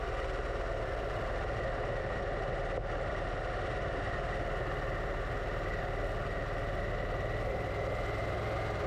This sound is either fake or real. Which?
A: real